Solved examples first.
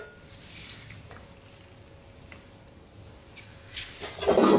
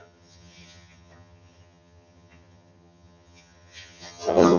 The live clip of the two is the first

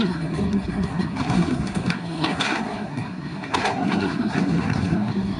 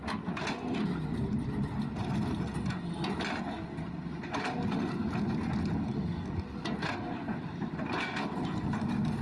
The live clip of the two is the second